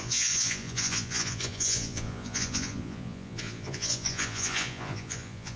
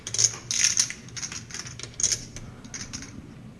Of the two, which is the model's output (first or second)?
first